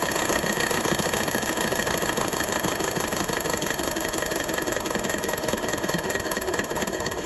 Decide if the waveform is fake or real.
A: fake